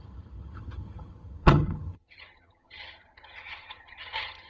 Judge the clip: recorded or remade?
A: remade